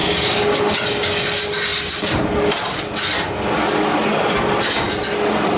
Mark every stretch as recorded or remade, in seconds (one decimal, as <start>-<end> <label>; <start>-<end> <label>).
0.0-0.6 remade; 0.6-5.6 recorded